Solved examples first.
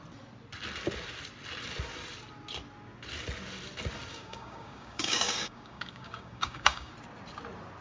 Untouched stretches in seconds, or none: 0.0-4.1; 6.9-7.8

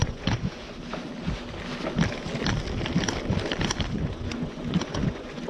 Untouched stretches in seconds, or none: 0.6-3.9

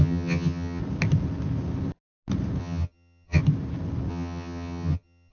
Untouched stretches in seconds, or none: 0.8-2.6; 3.4-4.1